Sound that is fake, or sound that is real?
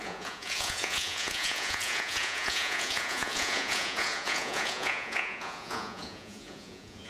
fake